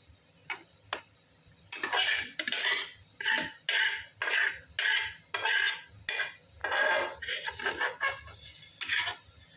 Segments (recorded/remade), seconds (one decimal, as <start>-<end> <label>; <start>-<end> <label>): 0.0-9.6 recorded